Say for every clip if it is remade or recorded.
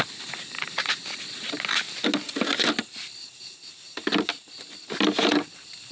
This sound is recorded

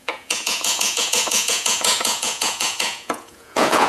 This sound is remade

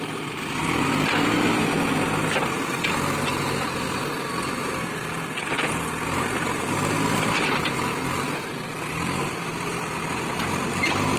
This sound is recorded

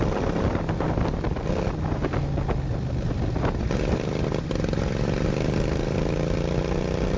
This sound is recorded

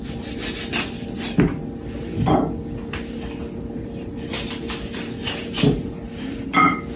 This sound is recorded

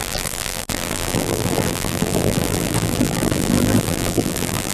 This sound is remade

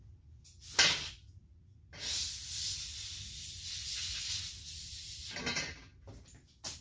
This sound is recorded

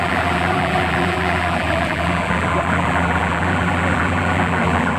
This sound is remade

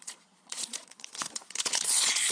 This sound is remade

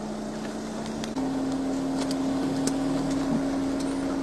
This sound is recorded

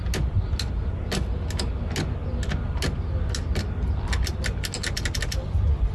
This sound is recorded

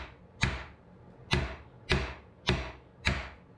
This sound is recorded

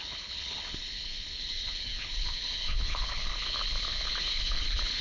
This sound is remade